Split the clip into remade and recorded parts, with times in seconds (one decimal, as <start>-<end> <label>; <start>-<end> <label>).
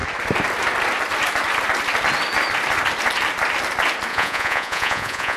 0.0-4.1 recorded; 4.1-5.4 remade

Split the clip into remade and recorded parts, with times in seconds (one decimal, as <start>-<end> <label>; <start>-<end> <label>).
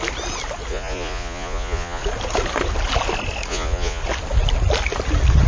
0.0-0.7 recorded; 0.7-2.0 remade; 2.0-3.5 recorded; 3.5-4.0 remade; 4.0-5.5 recorded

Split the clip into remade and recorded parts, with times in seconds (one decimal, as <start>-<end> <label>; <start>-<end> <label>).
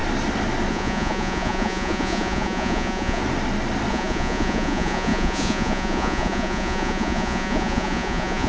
0.0-0.7 recorded; 0.7-3.2 remade; 3.2-3.9 recorded; 3.9-8.5 remade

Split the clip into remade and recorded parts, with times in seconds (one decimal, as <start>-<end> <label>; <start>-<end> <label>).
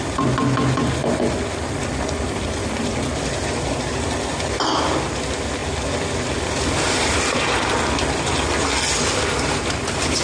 0.0-10.2 recorded